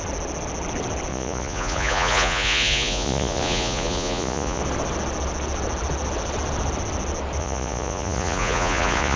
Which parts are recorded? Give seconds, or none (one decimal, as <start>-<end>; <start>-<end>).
0.0-1.1; 4.6-7.4